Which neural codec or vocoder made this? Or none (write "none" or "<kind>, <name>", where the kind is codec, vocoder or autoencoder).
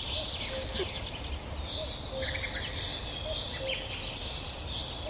none